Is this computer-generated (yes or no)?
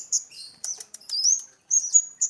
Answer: yes